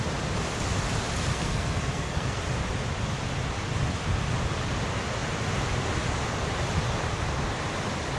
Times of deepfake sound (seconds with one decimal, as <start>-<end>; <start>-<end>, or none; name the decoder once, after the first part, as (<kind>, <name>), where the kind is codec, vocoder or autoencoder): 1.3-2.4 (codec, SNAC)